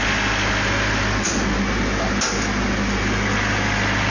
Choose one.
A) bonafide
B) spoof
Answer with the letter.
A